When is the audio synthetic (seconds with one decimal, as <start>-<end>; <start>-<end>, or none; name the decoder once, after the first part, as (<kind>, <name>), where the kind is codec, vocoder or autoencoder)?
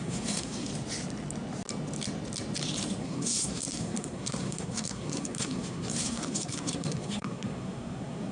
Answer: 0.0-0.7 (codec, SNAC); 3.0-8.3